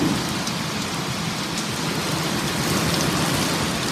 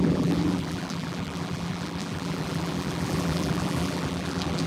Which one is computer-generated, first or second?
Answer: second